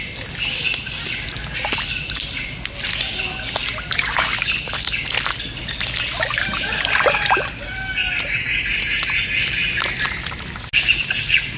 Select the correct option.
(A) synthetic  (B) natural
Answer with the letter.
B